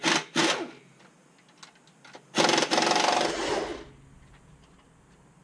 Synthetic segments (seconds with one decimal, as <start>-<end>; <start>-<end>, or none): none